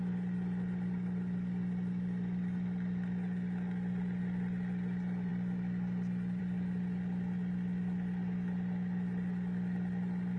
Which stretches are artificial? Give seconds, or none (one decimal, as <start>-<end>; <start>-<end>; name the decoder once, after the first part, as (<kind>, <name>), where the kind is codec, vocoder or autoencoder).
none